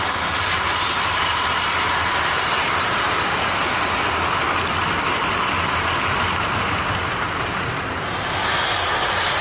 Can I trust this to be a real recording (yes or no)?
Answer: yes